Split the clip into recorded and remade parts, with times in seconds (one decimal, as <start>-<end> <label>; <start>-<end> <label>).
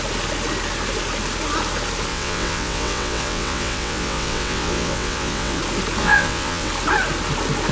0.0-2.1 recorded; 2.1-5.6 remade; 5.6-6.0 recorded; 6.0-6.7 remade; 6.7-7.7 recorded